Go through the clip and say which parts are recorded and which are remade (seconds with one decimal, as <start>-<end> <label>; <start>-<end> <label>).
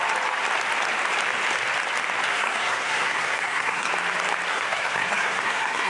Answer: 0.0-2.3 recorded; 2.3-3.9 remade; 3.9-4.5 recorded; 4.5-5.9 remade